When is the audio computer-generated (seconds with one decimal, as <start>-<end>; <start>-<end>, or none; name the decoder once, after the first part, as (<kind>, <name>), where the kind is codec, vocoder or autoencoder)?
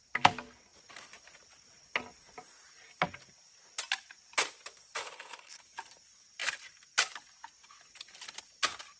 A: 5.0-5.6 (codec, HILCodec)